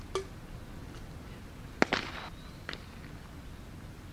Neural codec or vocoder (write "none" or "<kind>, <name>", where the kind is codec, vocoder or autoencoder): none